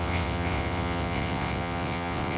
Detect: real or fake fake